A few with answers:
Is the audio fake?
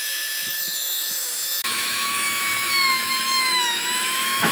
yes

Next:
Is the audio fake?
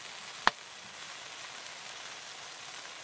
no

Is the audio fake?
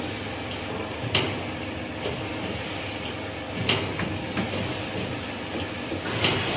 no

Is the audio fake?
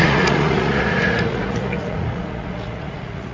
yes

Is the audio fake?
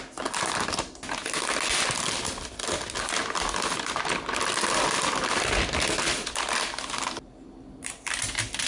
no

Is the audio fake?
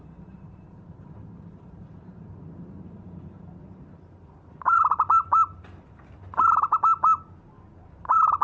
yes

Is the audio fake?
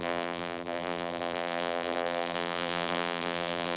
yes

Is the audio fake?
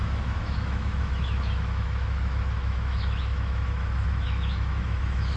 yes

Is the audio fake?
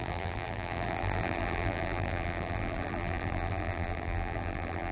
yes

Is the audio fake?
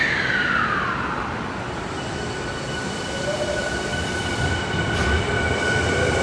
yes